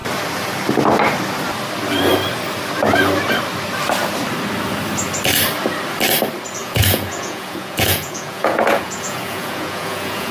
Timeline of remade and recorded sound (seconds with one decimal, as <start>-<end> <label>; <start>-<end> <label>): 0.0-6.6 recorded; 6.6-10.3 remade